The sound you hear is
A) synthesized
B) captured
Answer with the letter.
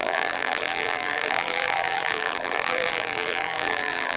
A